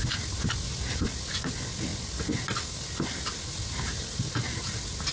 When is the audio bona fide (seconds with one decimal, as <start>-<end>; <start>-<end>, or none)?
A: 0.0-5.1